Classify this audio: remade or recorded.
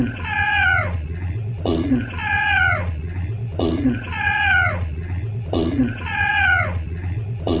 remade